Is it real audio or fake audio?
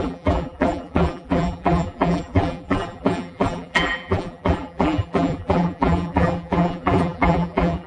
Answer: fake